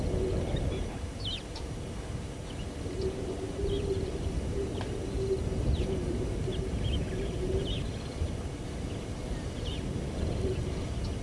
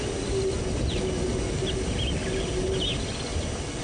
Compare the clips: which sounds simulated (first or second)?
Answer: first